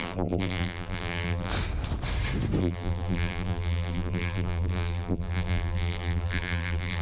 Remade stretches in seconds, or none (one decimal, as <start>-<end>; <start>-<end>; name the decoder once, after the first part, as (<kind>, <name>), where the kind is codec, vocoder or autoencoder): 0.0-1.5 (vocoder, BigVGAN v2); 2.6-7.0